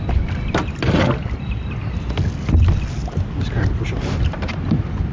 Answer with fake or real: real